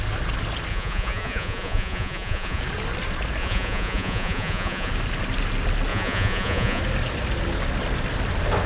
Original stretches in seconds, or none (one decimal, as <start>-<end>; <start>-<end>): 0.0-0.7; 2.6-3.4; 4.9-5.9; 6.8-8.7